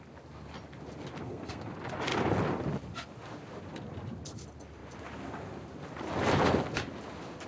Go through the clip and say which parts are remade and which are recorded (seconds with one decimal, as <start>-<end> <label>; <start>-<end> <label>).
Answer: 0.0-1.2 recorded; 1.2-1.7 remade; 1.7-7.5 recorded